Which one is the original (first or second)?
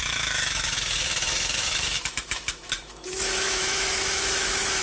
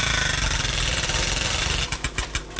second